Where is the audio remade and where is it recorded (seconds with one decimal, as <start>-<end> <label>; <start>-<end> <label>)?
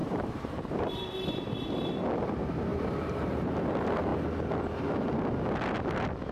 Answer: 0.0-0.9 remade; 0.9-2.7 recorded; 2.7-3.5 remade; 3.5-6.3 recorded